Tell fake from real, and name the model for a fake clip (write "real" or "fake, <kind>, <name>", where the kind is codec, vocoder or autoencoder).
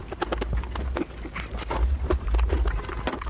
real